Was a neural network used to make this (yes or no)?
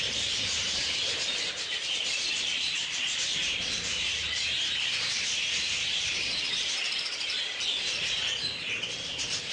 yes